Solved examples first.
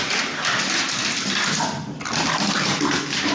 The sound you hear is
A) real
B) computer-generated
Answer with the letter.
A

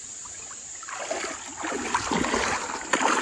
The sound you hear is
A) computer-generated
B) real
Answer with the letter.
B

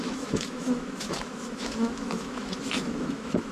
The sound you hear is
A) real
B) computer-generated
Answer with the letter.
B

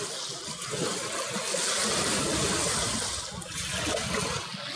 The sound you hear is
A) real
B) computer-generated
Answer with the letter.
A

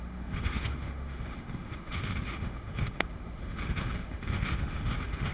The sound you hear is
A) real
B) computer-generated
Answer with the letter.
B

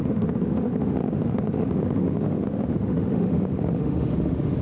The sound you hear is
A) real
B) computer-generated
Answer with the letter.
B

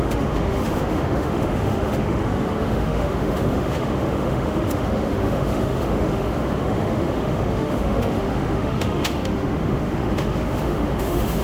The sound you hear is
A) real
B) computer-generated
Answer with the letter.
B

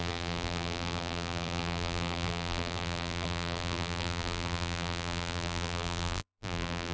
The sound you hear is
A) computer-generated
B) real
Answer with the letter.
A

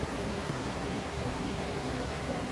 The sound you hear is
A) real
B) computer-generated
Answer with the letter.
B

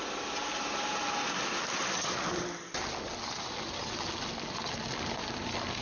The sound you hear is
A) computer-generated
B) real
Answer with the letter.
B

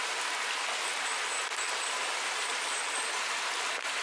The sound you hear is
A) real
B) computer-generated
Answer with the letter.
A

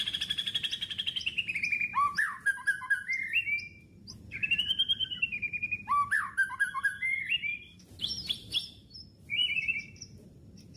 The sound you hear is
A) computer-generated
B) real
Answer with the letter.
A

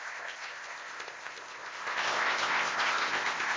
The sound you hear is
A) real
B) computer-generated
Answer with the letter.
B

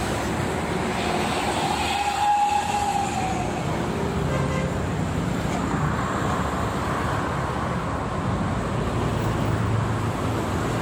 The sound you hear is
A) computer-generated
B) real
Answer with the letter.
B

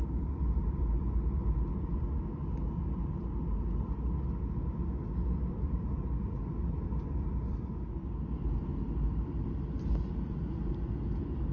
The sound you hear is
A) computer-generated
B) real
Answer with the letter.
B